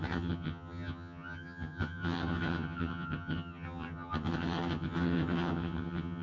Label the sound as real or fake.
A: fake